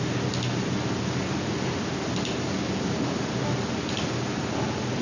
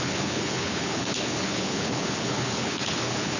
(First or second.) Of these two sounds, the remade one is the second